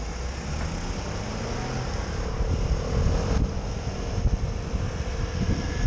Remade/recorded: recorded